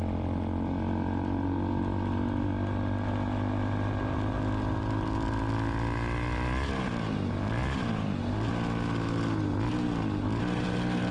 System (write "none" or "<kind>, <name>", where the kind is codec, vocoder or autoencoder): none